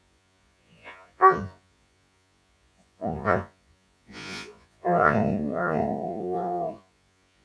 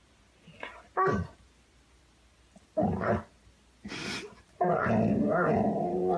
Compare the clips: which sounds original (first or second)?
second